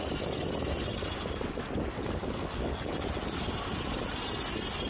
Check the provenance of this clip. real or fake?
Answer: real